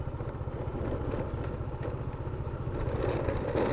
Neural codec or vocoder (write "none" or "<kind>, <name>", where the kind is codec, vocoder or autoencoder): none